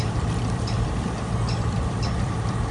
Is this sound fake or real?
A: fake